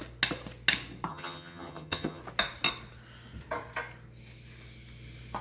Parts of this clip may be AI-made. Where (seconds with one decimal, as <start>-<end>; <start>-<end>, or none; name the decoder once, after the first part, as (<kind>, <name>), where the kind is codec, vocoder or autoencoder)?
1.1-2.2 (vocoder, HiFi-GAN)